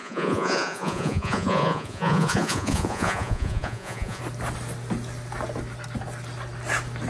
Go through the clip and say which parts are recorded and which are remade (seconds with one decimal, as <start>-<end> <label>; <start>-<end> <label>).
0.0-4.2 remade; 4.2-7.1 recorded